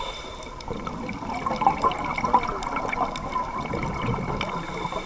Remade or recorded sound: recorded